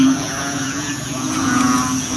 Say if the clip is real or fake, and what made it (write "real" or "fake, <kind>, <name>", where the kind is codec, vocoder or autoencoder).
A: fake, vocoder, Vocos